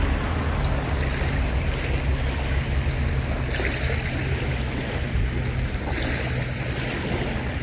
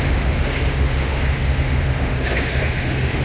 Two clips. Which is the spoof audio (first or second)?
second